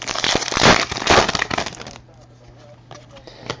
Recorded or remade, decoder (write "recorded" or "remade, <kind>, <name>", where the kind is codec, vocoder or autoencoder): recorded